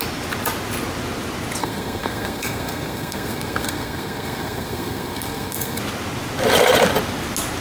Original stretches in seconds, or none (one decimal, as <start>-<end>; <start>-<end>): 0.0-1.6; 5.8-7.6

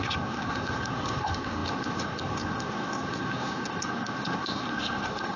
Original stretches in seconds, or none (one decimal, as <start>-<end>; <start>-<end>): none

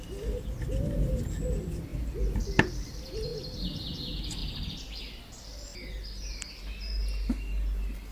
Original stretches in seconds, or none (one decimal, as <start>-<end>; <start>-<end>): 0.0-3.3; 3.9-4.4; 5.2-5.7; 6.5-8.1

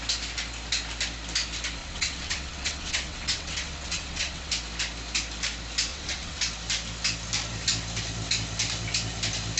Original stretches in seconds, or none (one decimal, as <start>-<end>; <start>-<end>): 0.0-1.8; 4.5-5.9; 6.4-9.6

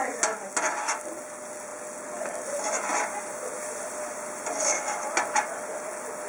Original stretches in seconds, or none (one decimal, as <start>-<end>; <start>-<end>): 0.0-6.3

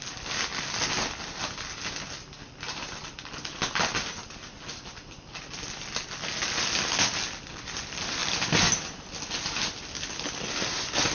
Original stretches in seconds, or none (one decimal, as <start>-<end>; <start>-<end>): 0.0-11.1